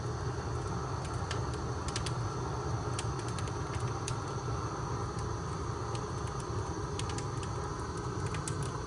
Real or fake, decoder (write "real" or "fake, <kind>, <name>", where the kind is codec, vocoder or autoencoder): real